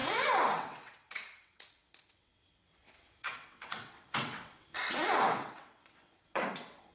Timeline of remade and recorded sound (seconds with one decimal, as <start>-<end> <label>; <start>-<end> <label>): 0.0-6.9 remade